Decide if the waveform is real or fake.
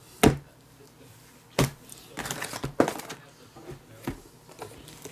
real